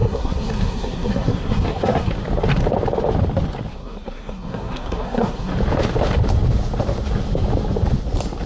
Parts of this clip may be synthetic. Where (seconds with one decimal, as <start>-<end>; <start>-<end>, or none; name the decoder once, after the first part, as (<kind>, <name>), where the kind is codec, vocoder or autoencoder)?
0.0-2.1 (codec, SNAC); 3.7-5.5